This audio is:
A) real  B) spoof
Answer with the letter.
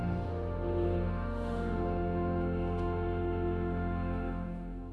B